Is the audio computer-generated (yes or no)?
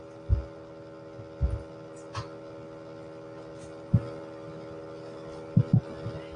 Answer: no